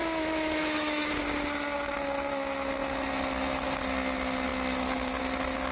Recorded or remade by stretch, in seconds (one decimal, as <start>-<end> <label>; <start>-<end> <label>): 0.0-1.1 remade; 1.1-5.7 recorded